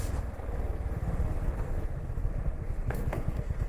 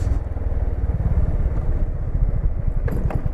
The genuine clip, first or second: second